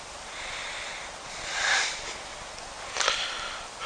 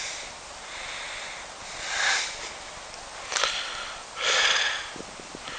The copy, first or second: first